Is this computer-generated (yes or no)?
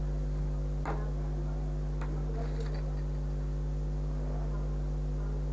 no